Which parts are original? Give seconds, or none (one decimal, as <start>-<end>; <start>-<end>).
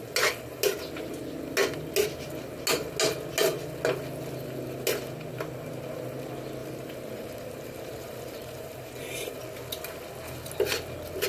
0.0-6.6; 9.4-11.3